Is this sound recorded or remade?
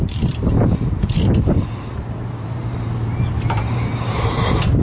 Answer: remade